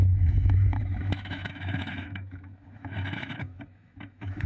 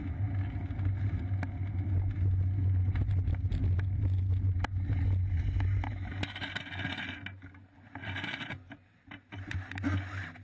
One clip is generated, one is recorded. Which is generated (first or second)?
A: first